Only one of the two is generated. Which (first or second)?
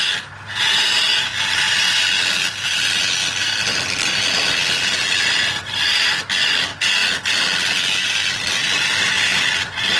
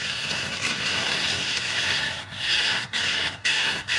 second